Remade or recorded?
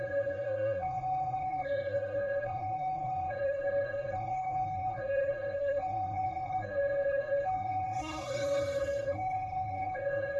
remade